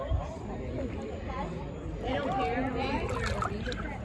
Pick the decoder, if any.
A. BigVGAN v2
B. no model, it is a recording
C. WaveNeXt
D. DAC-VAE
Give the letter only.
B